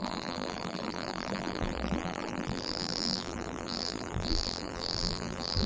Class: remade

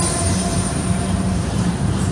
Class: remade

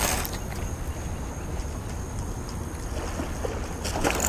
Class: recorded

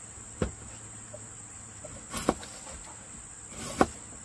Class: recorded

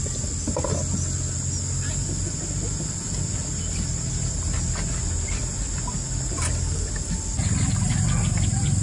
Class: recorded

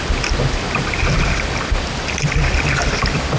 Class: remade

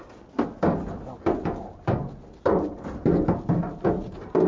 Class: recorded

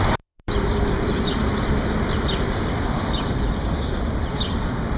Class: remade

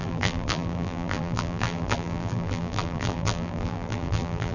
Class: remade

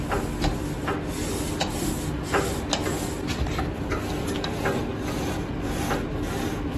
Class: recorded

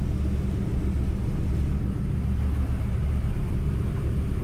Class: recorded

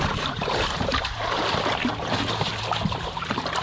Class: remade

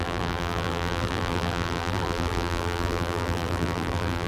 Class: remade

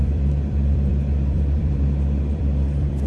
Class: remade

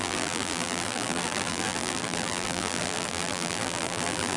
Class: remade